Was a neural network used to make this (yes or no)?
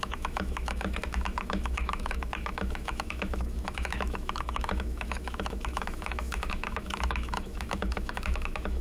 yes